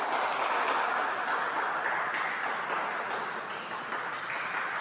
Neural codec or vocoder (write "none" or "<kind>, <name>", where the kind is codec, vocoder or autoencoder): none